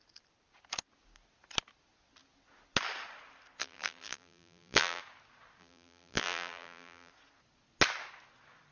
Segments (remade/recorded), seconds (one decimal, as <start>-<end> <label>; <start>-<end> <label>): 0.0-3.6 recorded; 3.6-5.0 remade; 5.0-5.6 recorded; 5.6-7.1 remade; 7.1-8.7 recorded